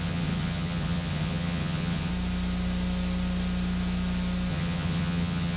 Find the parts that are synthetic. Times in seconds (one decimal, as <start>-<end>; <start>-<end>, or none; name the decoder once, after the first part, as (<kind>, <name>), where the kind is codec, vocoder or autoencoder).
0.0-2.1 (vocoder, HiFi-GAN); 4.5-5.6